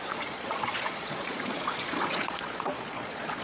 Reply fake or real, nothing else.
fake